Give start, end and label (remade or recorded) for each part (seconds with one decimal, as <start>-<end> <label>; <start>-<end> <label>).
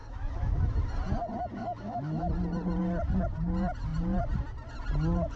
0.0-0.7 remade; 0.7-1.6 recorded; 1.6-2.3 remade; 2.3-5.4 recorded